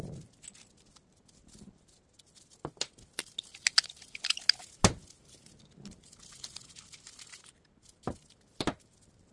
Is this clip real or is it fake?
real